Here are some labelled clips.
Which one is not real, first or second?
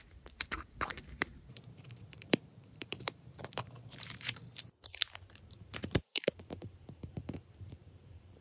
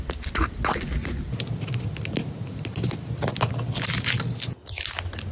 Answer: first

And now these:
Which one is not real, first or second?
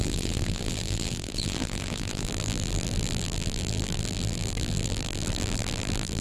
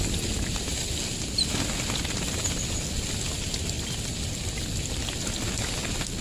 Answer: first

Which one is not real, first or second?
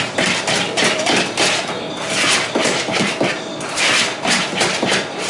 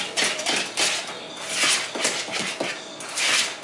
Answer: first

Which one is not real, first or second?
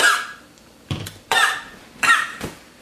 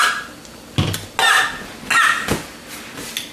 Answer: first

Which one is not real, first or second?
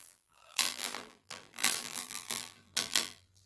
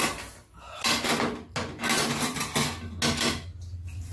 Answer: first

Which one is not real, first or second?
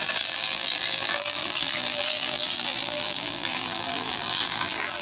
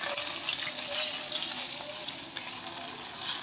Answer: first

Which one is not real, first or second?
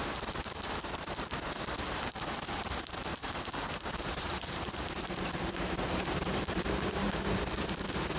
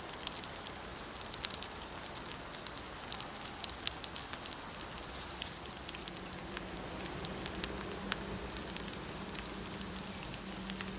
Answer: first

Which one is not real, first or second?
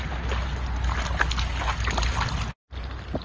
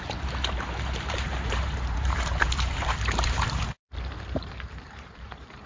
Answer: second